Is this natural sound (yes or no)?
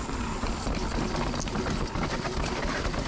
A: yes